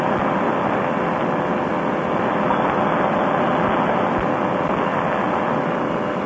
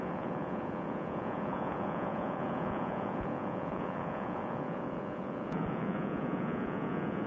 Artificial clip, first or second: second